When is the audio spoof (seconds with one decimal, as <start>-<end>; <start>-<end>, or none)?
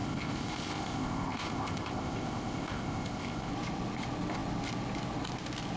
0.0-3.5